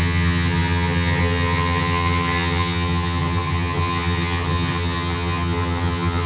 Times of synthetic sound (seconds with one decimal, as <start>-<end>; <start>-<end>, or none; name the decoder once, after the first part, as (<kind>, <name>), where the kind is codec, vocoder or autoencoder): 0.0-6.3 (vocoder, HiFi-GAN)